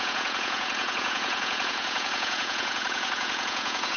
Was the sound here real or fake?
fake